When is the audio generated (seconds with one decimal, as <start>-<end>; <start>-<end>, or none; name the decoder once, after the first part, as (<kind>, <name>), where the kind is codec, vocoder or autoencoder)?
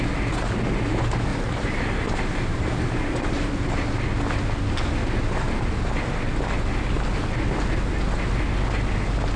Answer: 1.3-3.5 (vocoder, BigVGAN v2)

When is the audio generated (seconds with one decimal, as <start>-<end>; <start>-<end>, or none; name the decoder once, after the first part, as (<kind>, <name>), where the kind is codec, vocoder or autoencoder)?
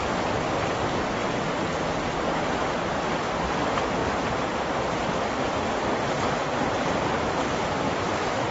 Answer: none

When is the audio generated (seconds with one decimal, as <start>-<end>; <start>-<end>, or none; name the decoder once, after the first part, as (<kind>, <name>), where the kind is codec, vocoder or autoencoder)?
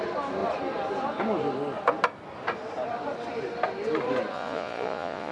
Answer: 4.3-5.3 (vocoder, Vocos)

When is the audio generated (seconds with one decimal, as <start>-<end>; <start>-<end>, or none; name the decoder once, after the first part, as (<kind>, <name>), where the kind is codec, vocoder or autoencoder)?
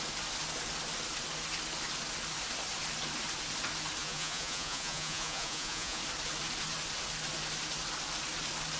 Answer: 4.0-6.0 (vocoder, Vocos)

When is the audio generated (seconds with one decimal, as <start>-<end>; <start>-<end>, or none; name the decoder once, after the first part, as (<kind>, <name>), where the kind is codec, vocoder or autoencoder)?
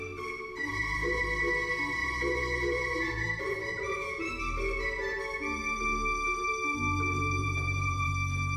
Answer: 0.6-1.2 (vocoder, Vocos); 2.0-4.3; 7.4-8.1